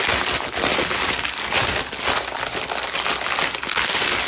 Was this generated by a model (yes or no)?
no